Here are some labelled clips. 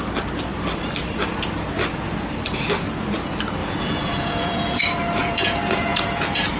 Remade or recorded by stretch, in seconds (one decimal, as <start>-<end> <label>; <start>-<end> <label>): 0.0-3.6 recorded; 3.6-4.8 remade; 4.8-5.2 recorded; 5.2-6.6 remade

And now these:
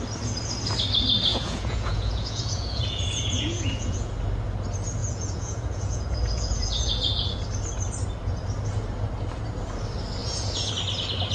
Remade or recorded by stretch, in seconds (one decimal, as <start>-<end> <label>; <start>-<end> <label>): 0.0-1.3 recorded; 1.3-4.1 remade; 4.1-5.0 recorded; 5.0-7.4 remade; 7.4-10.2 recorded; 10.2-10.7 remade; 10.7-11.3 recorded

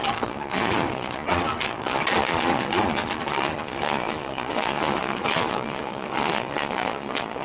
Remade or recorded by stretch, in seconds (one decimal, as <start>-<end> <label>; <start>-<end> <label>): 0.0-7.4 remade

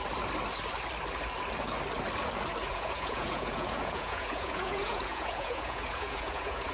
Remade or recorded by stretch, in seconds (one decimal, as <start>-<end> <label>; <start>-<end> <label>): 0.0-2.7 recorded; 2.7-6.7 remade

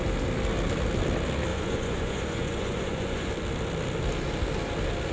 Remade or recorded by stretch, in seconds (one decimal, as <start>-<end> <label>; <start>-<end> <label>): 0.0-1.5 recorded; 1.5-3.3 remade; 3.3-5.1 recorded

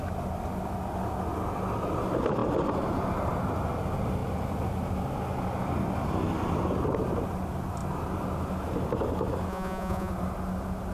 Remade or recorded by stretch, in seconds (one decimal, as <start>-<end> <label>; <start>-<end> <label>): 0.0-9.5 recorded; 9.5-10.1 remade; 10.1-10.9 recorded